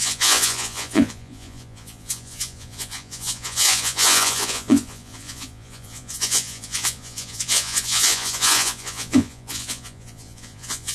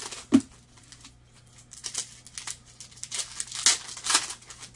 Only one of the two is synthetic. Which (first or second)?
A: first